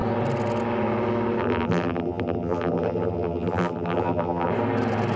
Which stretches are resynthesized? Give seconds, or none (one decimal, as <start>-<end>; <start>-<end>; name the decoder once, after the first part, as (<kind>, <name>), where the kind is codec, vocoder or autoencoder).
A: 1.4-4.5 (vocoder, BigVGAN v2)